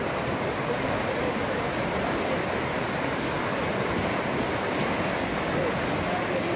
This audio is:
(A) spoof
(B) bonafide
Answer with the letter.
B